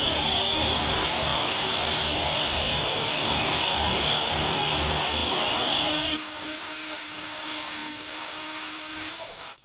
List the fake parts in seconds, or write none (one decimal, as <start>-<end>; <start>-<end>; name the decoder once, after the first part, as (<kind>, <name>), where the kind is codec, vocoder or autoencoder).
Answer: 0.0-9.6 (codec, DAC)